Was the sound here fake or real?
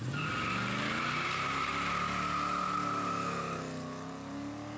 real